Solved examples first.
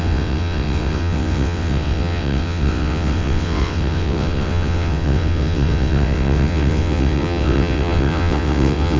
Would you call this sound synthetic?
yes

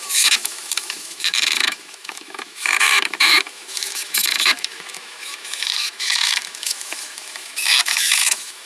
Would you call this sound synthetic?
yes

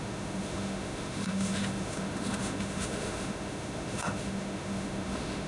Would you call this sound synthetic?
yes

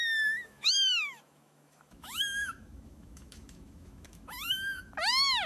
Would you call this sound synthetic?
yes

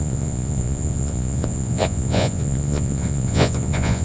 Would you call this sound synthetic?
yes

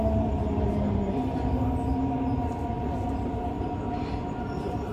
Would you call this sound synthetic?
yes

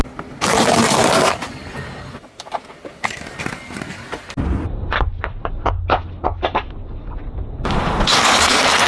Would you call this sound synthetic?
no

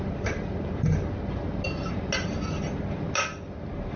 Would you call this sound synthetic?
no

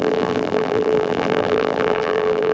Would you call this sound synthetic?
yes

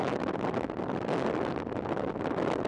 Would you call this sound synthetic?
no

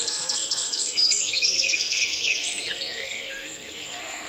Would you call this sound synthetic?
yes